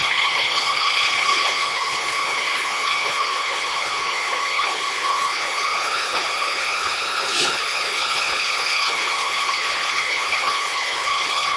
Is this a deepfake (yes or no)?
yes